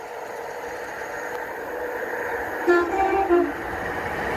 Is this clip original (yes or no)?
no